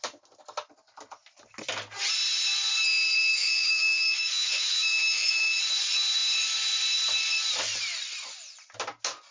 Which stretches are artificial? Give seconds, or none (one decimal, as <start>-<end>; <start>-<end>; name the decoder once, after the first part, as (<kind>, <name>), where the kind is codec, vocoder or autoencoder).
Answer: 3.3-5.6 (autoencoder, DAC-VAE)